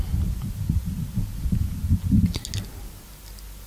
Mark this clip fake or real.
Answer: real